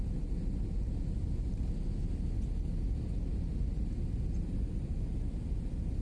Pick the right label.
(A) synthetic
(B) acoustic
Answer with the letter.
B